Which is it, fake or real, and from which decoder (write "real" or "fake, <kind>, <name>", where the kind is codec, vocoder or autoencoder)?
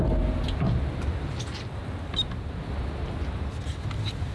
real